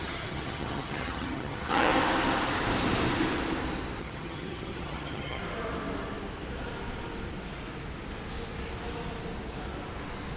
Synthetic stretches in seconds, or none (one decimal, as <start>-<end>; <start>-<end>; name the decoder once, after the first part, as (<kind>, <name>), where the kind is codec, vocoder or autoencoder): 0.0-1.9 (vocoder, HiFi-GAN); 4.0-5.4